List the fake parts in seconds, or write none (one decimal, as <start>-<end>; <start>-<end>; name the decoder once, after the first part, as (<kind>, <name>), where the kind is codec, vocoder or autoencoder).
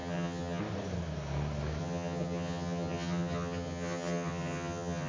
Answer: 0.0-0.6 (vocoder, HiFi-GAN); 1.8-5.1